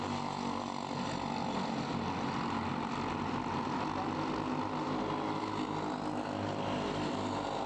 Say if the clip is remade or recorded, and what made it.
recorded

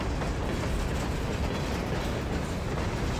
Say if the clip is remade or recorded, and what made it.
recorded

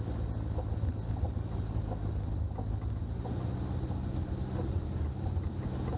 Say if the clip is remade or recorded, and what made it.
recorded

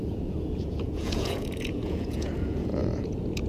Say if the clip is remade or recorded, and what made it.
remade, vocoder, Vocos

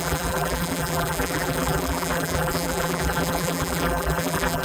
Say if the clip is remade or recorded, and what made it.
remade, vocoder, BigVGAN v2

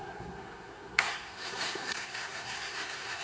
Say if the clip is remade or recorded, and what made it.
remade, codec, SNAC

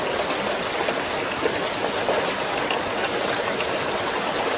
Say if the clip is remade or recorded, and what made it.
recorded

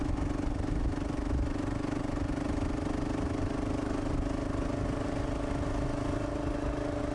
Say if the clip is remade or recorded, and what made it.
recorded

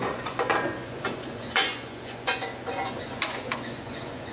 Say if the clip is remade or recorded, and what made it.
remade, vocoder, Vocos